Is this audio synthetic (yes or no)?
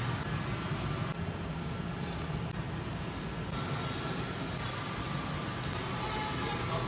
no